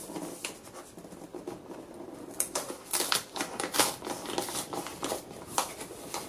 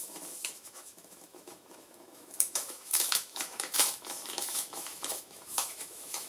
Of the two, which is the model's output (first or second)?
second